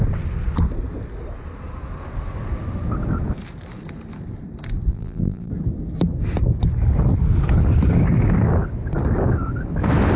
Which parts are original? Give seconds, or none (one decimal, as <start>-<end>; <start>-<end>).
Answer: 0.0-4.9; 5.5-10.2